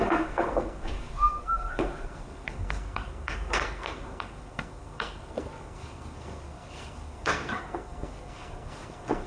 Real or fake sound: fake